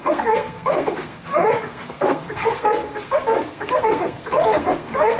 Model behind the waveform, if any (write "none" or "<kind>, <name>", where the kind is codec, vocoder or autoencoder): codec, SNAC